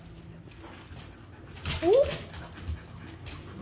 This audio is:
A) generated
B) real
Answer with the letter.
B